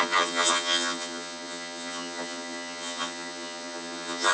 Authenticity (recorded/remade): remade